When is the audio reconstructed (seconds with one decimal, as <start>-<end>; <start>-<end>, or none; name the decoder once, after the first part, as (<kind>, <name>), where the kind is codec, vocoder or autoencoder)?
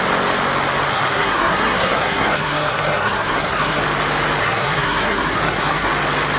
0.9-3.8 (codec, SNAC); 4.4-5.9